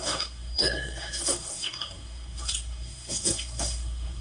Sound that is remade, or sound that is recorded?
remade